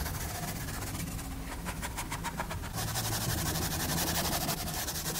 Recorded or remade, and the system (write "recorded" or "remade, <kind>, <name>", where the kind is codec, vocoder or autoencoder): remade, vocoder, BigVGAN v2